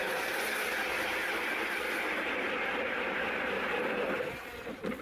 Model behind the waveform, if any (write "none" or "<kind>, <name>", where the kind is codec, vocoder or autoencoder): none